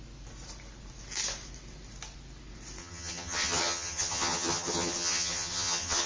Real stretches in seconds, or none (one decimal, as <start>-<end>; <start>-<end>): 0.0-2.8